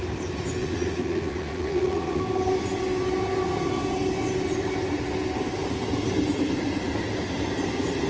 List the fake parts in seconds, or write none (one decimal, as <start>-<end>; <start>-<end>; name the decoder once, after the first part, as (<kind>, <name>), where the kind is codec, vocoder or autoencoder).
0.6-2.2 (vocoder, Vocos)